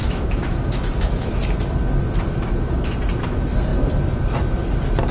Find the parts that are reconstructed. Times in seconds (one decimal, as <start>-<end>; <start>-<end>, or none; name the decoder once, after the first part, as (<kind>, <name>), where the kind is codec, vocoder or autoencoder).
0.0-1.4 (autoencoder, DAC-VAE)